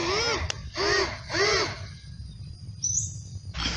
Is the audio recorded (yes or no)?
yes